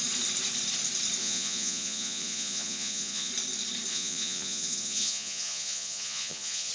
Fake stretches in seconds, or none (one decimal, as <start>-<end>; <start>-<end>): 1.2-3.3; 3.9-6.7